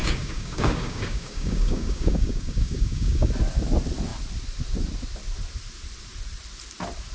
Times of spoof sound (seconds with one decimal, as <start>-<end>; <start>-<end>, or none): 0.0-3.3